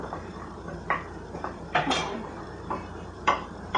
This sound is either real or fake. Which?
fake